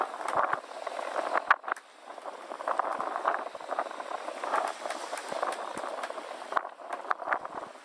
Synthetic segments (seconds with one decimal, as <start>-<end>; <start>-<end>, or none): none